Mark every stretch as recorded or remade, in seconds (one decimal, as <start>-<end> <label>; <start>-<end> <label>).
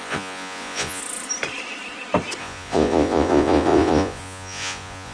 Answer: 0.0-1.0 remade; 1.0-2.4 recorded; 2.4-5.1 remade